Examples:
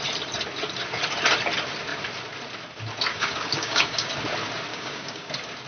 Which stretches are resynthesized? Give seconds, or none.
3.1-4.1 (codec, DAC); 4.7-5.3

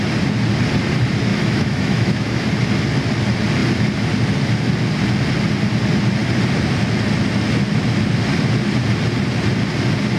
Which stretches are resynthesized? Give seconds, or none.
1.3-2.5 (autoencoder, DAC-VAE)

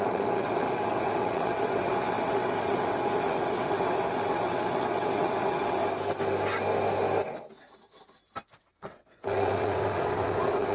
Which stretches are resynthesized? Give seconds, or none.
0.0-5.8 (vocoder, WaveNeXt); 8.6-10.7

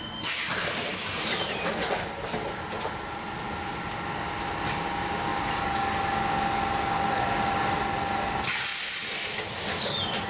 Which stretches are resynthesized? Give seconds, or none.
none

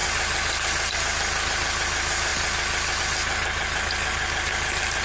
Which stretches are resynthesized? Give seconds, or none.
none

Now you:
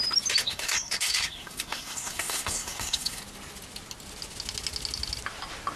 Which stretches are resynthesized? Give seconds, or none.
0.4-3.2 (codec, SNAC)

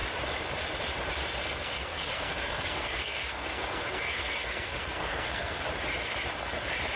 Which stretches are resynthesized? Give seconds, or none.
1.4-5.6 (codec, SNAC)

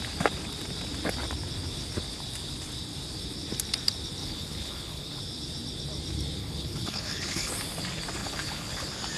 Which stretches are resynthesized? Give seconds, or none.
4.2-5.2 (codec, HILCodec); 6.4-7.5; 8.2-8.7